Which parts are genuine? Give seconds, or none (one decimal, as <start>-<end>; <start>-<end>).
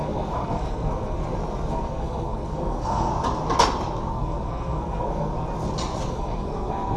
1.2-1.7; 3.1-4.1; 5.3-6.1